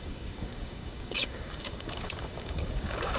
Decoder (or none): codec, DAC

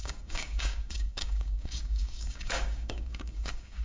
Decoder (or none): codec, DAC